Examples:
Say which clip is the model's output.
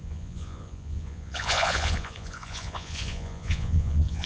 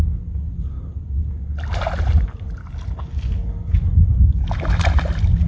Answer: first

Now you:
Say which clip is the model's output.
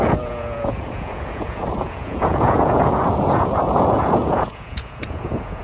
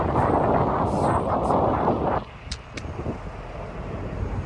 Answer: first